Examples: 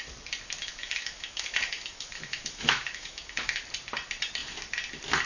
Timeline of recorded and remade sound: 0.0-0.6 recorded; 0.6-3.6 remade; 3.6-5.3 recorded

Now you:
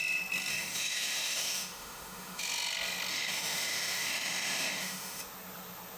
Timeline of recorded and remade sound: 0.0-0.5 recorded; 0.5-2.4 remade; 2.4-3.1 recorded; 3.1-5.2 remade; 5.2-6.0 recorded

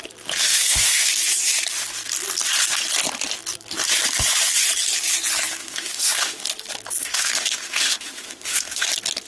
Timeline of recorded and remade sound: 0.0-0.4 recorded; 0.4-1.1 remade; 1.1-5.6 recorded; 5.6-6.4 remade; 6.4-7.0 recorded; 7.0-8.9 remade; 8.9-9.3 recorded

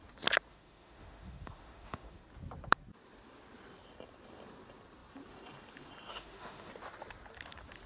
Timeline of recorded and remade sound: 0.0-0.5 recorded; 0.5-2.2 remade; 2.2-6.1 recorded; 6.1-6.7 remade; 6.7-7.9 recorded

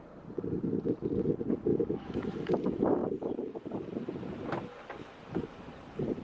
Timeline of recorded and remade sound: 0.0-1.7 recorded; 1.7-2.5 remade; 2.5-6.2 recorded

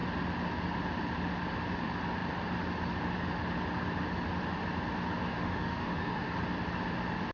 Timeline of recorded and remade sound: 0.0-5.3 recorded; 5.3-6.3 remade; 6.3-7.3 recorded